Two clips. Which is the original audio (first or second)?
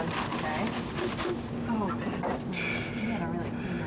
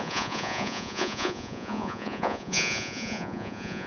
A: first